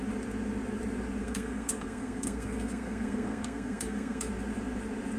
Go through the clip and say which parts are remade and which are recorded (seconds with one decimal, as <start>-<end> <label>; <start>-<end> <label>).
0.0-1.2 recorded; 1.2-4.3 remade; 4.3-5.2 recorded